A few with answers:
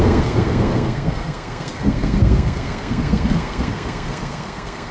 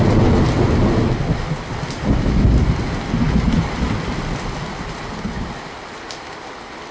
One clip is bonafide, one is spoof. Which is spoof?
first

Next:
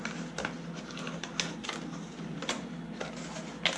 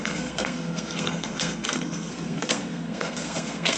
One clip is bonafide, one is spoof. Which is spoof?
second